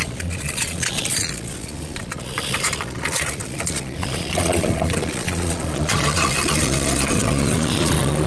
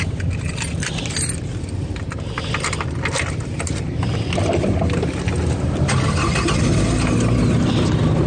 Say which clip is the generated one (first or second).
first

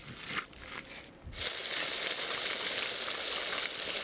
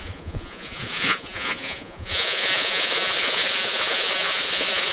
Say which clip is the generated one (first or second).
second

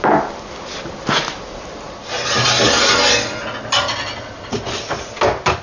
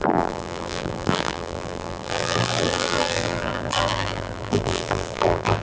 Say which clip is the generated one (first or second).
second